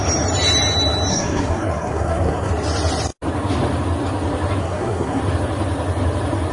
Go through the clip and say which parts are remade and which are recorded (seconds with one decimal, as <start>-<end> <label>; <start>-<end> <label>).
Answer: 0.0-1.1 recorded; 1.1-2.5 remade; 2.5-4.6 recorded; 4.6-5.2 remade; 5.2-6.5 recorded